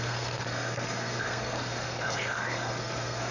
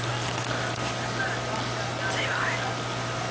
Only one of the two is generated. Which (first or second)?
first